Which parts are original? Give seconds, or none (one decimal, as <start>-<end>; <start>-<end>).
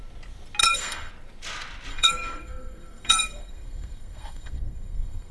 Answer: 0.0-0.6; 1.1-1.9